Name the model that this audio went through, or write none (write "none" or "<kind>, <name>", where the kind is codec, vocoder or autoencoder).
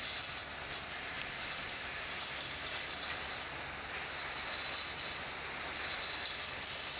none